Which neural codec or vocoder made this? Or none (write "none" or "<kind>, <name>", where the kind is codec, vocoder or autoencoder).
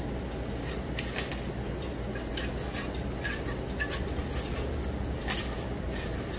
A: none